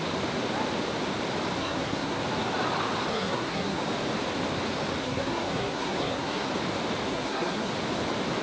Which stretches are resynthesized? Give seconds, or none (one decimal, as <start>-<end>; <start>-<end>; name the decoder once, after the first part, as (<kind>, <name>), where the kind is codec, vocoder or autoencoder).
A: 1.6-2.2 (codec, SNAC); 3.1-3.8; 5.0-6.5; 7.1-7.7